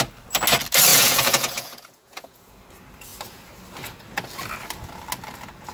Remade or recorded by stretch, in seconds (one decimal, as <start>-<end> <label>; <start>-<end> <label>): 0.0-0.9 recorded; 0.9-2.5 remade; 2.5-5.7 recorded

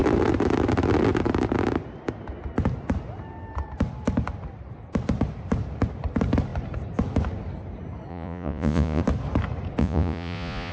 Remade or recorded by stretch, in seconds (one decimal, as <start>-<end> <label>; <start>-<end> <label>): 0.0-8.1 recorded; 8.1-9.0 remade; 9.0-9.8 recorded; 9.8-10.7 remade